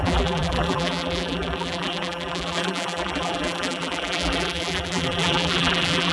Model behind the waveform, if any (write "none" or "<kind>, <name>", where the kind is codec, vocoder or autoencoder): vocoder, BigVGAN v2